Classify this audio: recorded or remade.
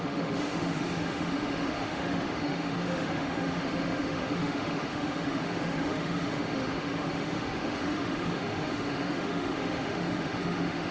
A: remade